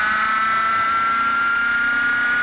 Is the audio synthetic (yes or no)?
no